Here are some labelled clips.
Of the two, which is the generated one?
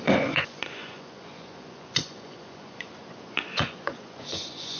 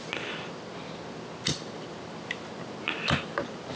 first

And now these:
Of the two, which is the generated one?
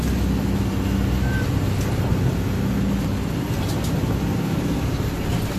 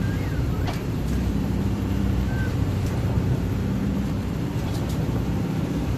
second